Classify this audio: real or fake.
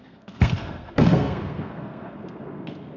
fake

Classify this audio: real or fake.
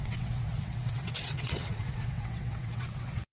fake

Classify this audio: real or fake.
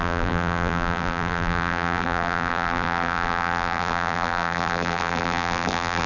fake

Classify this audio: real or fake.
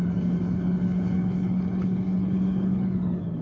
fake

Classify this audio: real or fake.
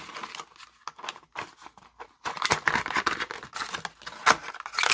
real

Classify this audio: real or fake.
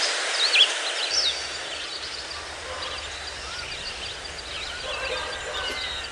real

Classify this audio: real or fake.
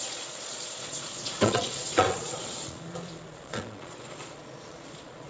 fake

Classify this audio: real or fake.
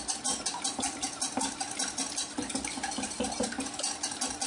real